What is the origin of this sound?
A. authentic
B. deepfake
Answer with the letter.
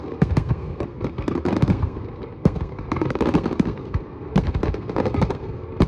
B